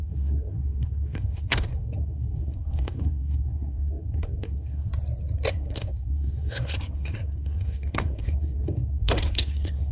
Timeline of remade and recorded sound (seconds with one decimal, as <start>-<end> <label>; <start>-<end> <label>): 0.0-4.9 remade; 4.9-5.5 recorded; 5.5-9.9 remade